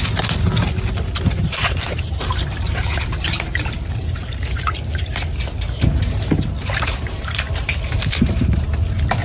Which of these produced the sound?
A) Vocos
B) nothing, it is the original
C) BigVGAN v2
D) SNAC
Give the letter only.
C